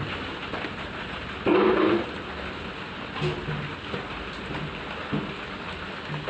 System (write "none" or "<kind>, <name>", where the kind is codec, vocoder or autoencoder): none